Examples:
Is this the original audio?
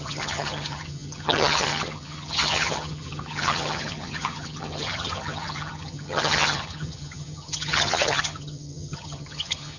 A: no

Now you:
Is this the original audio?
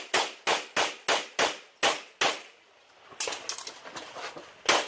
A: yes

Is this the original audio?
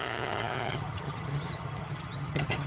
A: no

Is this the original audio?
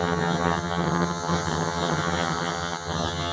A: no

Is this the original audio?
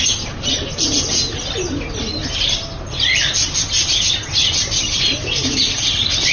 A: yes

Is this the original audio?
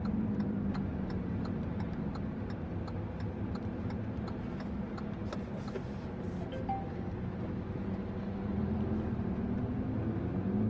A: yes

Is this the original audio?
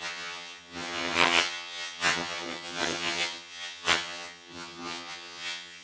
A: no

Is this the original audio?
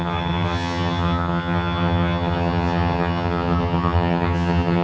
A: no